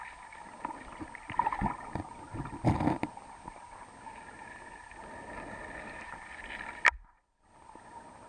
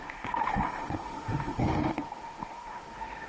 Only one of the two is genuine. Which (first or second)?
first